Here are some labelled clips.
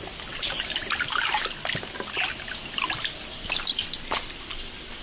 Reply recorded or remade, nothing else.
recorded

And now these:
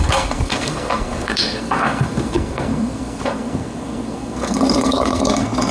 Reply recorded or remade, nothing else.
remade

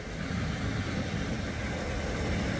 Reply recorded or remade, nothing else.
recorded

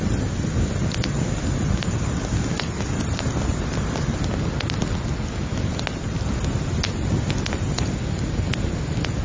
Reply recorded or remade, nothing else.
recorded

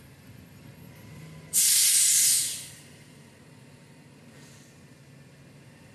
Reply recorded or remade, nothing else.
recorded